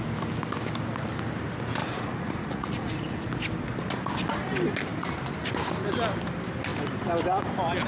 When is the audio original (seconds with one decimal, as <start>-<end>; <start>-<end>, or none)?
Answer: 0.0-1.8; 3.3-7.9